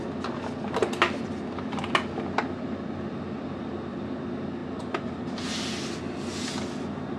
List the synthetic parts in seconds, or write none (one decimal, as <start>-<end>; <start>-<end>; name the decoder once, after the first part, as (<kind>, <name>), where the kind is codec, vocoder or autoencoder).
none